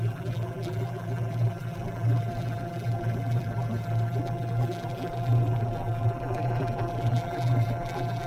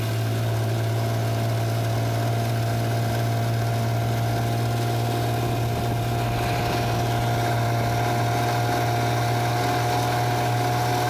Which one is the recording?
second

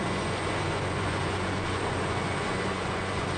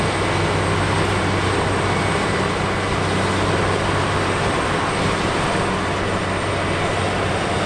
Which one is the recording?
second